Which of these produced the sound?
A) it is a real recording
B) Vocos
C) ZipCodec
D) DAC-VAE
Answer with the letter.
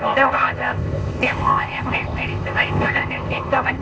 C